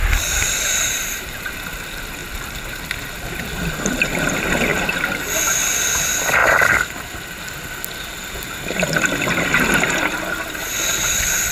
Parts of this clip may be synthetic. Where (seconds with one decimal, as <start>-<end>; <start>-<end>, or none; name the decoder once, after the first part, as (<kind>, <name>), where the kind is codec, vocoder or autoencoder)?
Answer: none